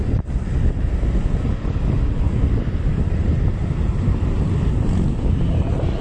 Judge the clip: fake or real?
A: real